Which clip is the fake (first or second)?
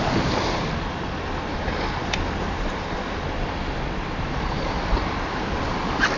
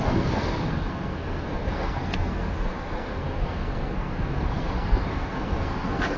second